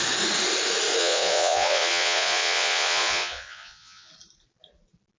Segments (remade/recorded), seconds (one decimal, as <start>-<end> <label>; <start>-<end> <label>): 0.0-1.0 recorded; 1.0-4.1 remade; 4.1-5.2 recorded